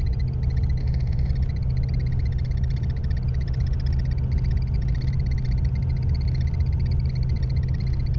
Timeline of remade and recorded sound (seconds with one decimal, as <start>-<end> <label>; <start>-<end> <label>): 0.0-0.8 recorded; 0.8-1.3 remade; 1.3-8.2 recorded